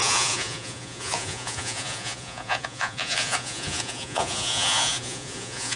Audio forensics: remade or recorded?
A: remade